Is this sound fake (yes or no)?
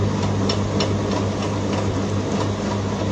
no